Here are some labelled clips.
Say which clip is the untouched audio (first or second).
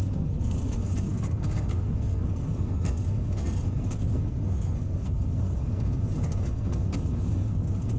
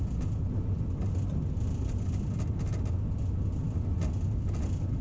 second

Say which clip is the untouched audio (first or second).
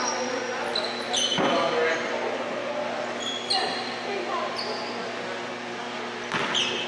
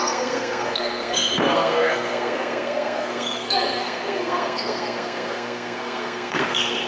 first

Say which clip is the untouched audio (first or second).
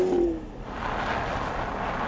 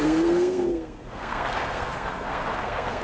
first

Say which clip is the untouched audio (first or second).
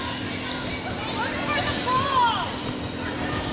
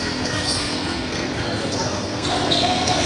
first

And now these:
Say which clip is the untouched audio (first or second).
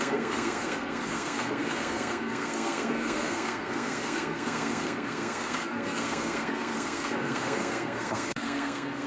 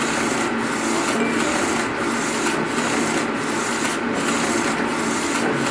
second